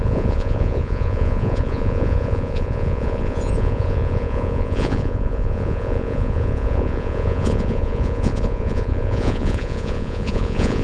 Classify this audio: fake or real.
fake